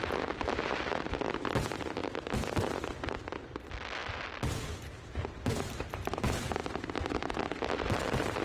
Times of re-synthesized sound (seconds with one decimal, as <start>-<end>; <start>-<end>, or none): none